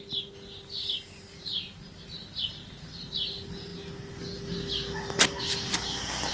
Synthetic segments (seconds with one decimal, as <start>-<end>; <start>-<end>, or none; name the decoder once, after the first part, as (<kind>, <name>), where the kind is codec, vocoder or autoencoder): none

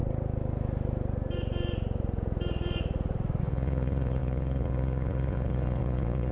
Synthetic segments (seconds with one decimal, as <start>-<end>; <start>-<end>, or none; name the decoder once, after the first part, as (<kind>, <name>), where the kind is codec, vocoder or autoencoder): 3.4-6.3 (vocoder, Vocos)

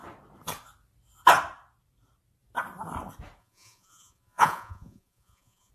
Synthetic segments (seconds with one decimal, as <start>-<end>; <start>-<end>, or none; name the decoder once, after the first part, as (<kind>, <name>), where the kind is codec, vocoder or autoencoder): 3.4-5.7 (vocoder, Vocos)